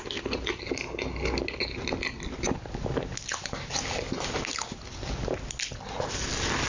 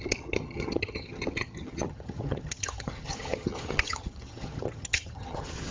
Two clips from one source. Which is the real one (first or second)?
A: first